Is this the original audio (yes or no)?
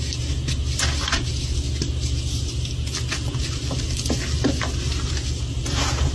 yes